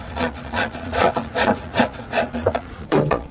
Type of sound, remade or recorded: remade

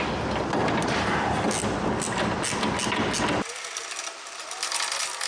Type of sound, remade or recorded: recorded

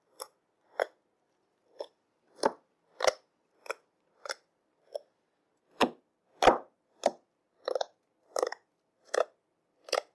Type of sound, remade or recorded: recorded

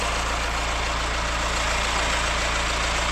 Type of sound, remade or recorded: recorded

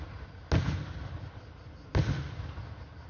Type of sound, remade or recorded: recorded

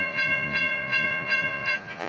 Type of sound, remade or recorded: remade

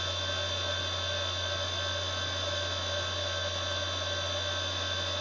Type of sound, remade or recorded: recorded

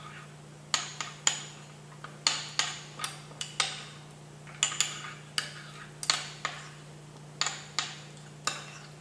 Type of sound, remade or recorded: recorded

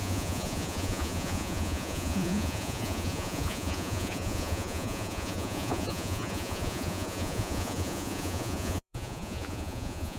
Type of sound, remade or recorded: remade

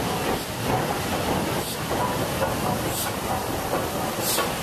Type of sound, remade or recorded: recorded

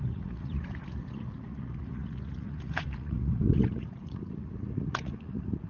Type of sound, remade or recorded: remade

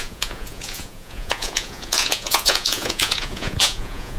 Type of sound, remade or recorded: remade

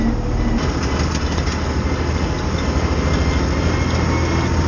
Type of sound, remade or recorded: recorded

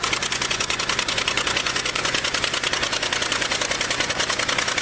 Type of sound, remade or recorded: remade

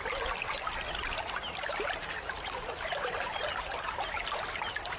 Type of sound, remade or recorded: recorded